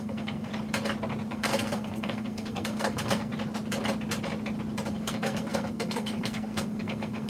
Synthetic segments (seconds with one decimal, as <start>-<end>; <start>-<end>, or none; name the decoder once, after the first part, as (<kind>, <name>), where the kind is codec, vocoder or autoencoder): 0.0-0.5 (codec, SNAC); 1.3-3.3; 4.9-7.3